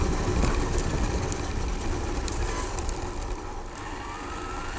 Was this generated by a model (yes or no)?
no